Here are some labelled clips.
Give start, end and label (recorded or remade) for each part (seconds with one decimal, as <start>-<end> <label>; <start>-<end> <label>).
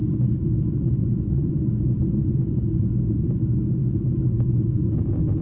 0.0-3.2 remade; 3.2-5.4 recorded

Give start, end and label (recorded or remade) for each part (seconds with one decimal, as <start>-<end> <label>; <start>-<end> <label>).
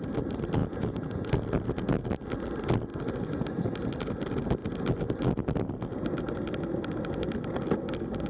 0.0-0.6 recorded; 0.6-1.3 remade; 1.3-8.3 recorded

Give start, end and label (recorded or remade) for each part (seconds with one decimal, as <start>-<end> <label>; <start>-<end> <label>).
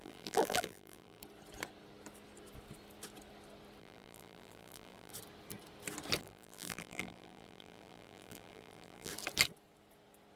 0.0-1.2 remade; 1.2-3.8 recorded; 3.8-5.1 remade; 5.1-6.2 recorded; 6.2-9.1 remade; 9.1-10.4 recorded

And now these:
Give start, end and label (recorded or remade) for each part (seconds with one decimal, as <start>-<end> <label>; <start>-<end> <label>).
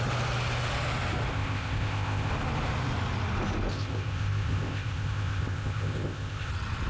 0.0-1.3 recorded; 1.3-2.3 remade; 2.3-3.7 recorded; 3.7-6.5 remade; 6.5-6.9 recorded